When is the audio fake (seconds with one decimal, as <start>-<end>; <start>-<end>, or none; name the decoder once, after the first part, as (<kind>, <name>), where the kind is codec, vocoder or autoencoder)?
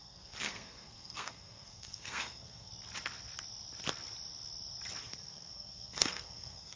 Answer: 0.0-2.7 (codec, SNAC); 5.0-6.8